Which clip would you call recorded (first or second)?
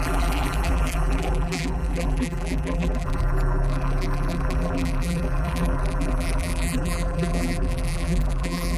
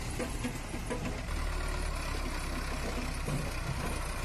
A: second